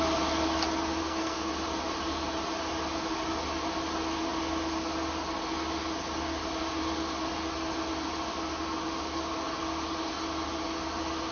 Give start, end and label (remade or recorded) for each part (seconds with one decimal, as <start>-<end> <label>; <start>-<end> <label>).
0.0-1.0 recorded; 1.0-1.5 remade; 1.5-11.3 recorded